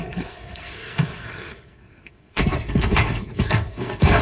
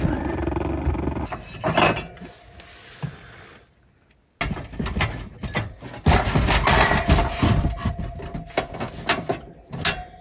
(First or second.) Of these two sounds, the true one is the second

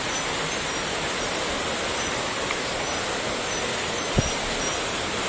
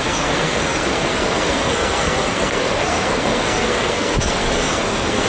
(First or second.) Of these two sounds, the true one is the first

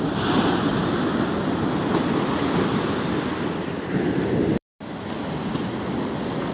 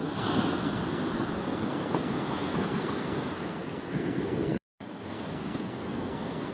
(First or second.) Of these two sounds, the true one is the first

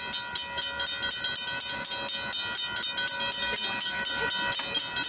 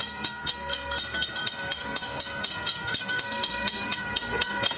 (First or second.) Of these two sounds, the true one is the first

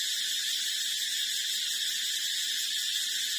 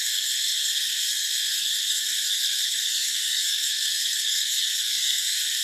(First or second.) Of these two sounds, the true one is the first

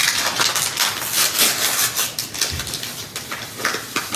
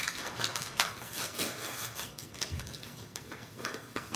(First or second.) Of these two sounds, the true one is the first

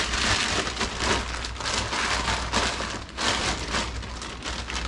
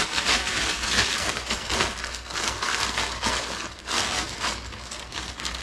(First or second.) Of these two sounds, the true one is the first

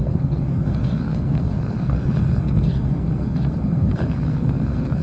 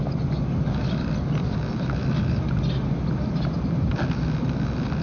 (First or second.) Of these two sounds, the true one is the second